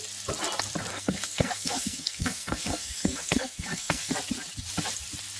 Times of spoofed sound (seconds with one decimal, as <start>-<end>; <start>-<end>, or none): 0.9-4.1